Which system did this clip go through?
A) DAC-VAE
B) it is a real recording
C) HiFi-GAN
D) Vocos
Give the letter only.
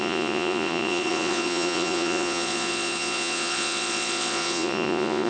D